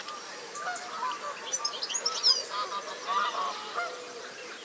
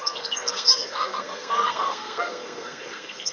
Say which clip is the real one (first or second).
first